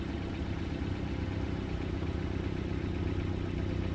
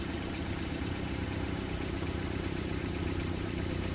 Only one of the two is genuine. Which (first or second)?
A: first